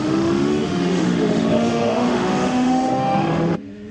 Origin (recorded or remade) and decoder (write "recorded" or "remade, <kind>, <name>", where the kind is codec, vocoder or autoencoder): remade, autoencoder, DAC-VAE